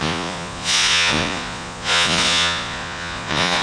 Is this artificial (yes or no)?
yes